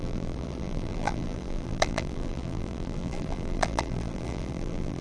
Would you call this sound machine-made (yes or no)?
yes